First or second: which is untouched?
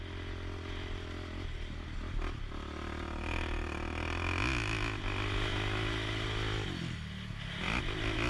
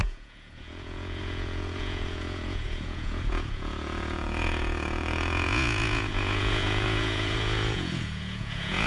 first